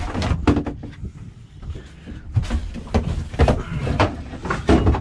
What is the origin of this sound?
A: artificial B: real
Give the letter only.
B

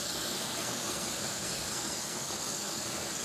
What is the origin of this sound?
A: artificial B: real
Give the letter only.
A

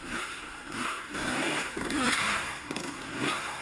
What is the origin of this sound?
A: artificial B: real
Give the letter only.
A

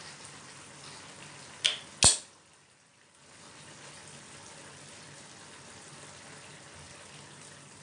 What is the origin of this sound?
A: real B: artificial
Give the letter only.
A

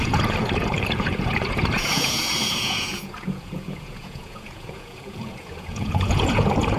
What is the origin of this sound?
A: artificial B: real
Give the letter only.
A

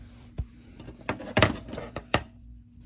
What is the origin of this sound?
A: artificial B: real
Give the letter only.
A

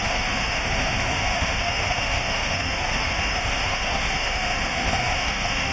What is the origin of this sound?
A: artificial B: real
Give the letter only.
A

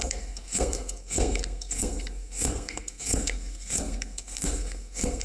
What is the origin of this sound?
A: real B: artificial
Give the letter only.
B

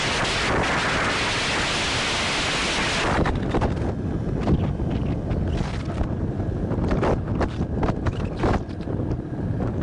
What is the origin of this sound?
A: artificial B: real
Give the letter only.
B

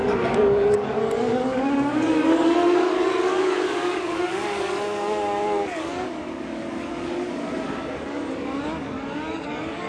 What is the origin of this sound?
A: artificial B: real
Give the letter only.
A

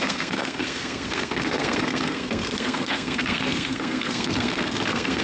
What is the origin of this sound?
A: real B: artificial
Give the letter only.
B